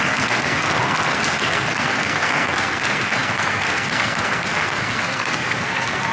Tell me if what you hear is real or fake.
fake